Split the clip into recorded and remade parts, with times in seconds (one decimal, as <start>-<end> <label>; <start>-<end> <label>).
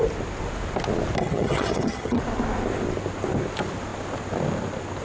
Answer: 0.0-1.2 recorded; 1.2-2.2 remade; 2.2-5.0 recorded